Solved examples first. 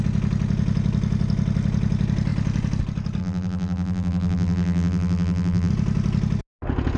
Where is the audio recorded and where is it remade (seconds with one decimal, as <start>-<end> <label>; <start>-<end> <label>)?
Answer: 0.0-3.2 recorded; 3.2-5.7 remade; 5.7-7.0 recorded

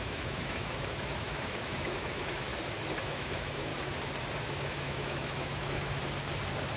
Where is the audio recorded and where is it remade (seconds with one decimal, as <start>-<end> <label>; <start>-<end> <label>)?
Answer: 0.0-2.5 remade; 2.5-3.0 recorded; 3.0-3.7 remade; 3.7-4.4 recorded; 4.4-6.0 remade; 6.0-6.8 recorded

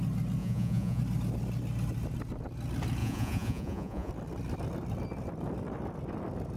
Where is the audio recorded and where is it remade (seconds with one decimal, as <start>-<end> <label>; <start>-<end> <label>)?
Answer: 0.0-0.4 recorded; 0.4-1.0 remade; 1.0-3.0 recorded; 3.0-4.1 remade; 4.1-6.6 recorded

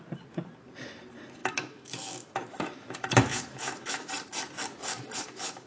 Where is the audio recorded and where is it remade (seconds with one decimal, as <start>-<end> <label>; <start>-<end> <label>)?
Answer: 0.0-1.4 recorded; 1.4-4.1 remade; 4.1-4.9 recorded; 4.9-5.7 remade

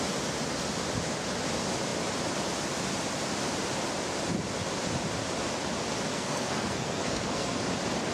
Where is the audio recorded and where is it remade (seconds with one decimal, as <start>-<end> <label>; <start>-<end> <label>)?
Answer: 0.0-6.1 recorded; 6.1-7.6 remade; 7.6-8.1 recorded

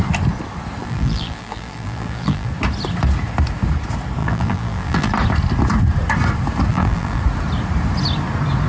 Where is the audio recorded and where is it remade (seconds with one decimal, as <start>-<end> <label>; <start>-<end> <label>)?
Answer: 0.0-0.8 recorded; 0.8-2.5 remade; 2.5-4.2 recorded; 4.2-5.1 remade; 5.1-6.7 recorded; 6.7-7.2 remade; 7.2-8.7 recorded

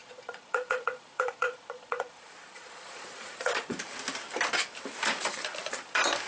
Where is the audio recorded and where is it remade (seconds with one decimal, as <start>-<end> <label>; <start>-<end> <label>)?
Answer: 0.0-3.8 remade; 3.8-6.3 recorded